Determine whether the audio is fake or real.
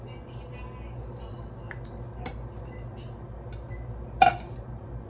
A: real